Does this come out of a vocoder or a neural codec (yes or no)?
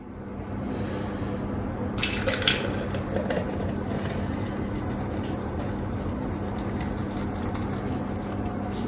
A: no